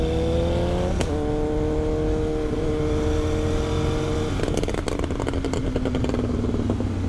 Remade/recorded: recorded